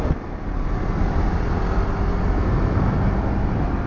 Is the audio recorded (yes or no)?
yes